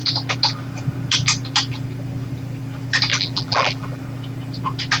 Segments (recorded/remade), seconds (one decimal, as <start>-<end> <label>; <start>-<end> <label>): 0.0-3.1 recorded; 3.1-4.0 remade; 4.0-5.0 recorded